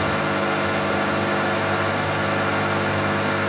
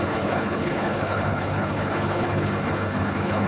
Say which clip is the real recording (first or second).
first